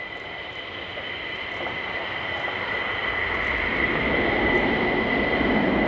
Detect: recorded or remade recorded